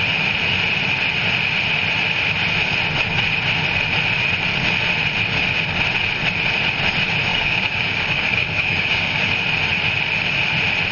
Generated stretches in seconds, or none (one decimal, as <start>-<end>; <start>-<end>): 7.3-9.2

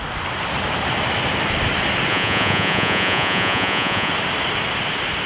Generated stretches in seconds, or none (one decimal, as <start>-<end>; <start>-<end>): 2.1-4.1

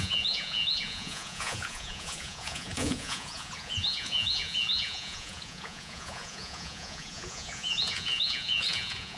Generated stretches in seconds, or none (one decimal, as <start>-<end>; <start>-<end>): 0.0-9.2

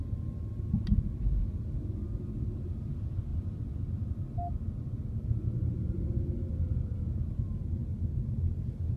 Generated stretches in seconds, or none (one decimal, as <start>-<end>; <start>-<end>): none

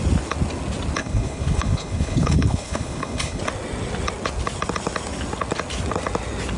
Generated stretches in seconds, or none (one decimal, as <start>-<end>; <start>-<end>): 1.0-3.4

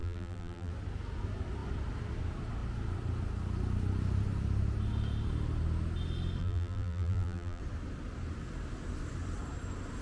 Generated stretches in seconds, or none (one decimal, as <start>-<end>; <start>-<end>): 0.0-0.7; 6.4-7.6

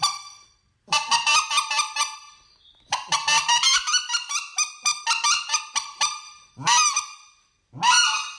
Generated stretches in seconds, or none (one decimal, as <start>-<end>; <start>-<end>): 0.0-1.3; 2.3-4.9; 5.6-7.1